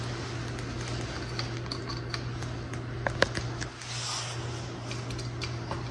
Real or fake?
real